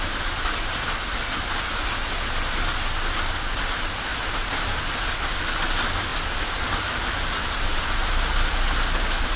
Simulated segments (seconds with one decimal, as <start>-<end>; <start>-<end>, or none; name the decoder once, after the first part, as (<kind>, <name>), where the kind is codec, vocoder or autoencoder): none